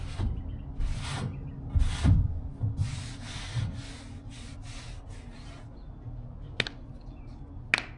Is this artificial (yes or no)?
no